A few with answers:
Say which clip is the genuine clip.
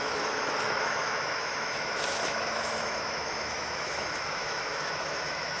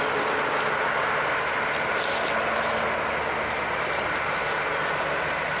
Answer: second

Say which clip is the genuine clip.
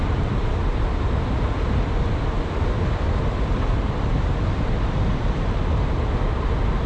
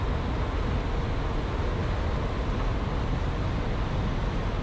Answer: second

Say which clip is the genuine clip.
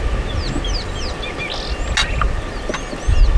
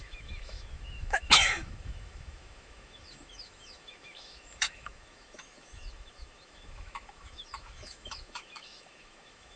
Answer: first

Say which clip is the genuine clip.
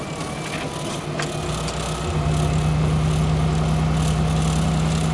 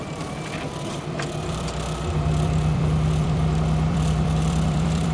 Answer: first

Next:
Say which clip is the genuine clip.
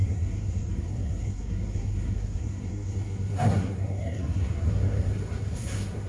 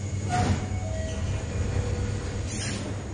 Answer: second